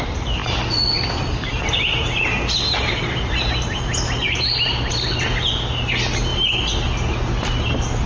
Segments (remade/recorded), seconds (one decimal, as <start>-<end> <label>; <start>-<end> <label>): 0.0-8.1 recorded